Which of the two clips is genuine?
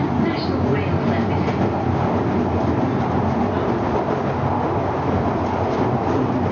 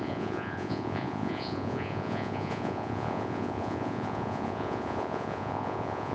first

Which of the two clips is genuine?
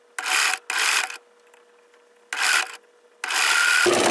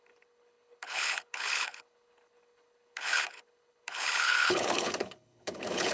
first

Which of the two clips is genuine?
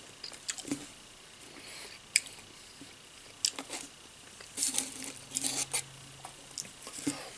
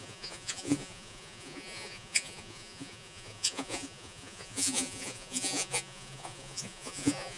first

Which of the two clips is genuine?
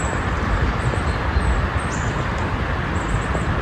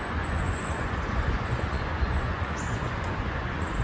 first